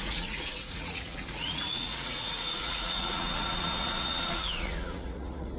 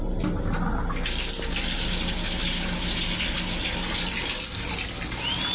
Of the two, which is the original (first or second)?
second